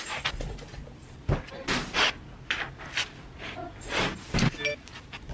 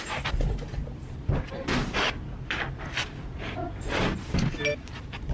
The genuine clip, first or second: first